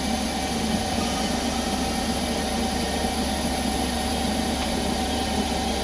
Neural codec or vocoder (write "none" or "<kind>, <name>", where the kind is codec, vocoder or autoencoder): none